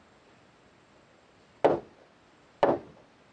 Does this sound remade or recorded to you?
recorded